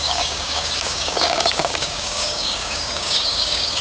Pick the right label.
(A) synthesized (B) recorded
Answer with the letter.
A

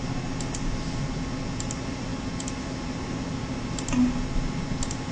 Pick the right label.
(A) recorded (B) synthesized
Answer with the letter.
A